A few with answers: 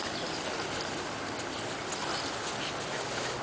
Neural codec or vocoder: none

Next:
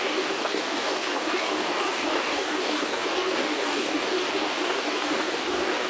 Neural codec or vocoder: codec, DAC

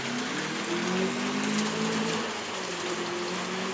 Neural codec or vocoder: none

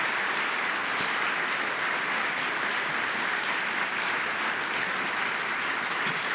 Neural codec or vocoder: none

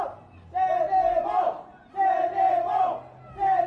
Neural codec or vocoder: none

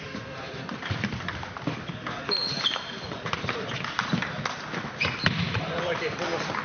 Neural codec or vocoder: none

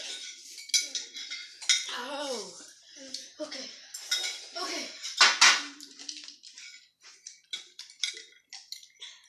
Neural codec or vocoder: none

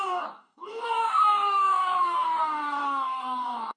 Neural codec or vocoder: codec, DAC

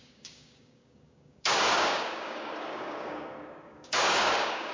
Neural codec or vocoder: codec, DAC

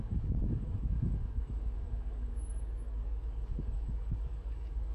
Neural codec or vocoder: codec, DAC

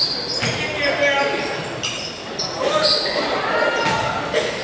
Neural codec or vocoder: none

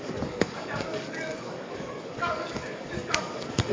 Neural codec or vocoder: codec, DAC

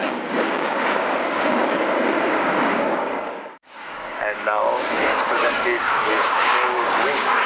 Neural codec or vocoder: codec, DAC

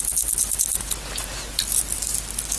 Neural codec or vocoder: none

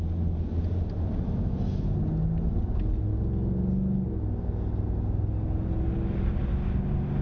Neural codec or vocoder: none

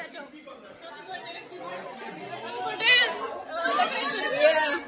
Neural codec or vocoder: none